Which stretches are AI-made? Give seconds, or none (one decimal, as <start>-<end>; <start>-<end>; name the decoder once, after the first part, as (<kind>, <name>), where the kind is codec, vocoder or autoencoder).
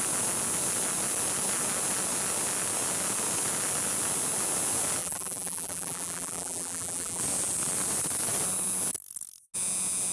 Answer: 5.0-7.2 (vocoder, BigVGAN v2)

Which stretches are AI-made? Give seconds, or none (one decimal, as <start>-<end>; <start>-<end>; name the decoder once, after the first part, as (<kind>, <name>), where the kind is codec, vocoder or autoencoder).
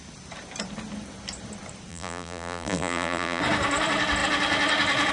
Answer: 1.9-3.4 (vocoder, BigVGAN v2)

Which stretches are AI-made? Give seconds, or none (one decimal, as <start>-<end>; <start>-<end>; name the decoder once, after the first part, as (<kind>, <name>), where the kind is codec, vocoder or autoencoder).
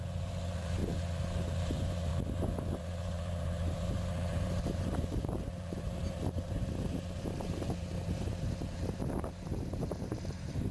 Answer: 0.0-0.8 (vocoder, BigVGAN v2); 1.6-2.1; 2.8-10.7